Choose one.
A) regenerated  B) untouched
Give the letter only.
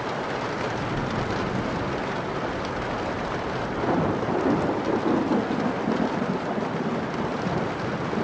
B